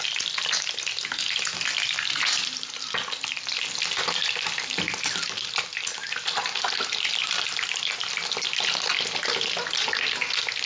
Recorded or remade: recorded